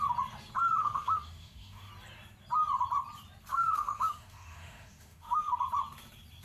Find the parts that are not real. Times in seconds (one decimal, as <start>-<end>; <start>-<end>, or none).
0.8-1.9; 3.5-5.5